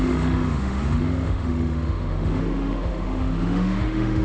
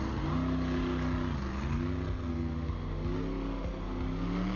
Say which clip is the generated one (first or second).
first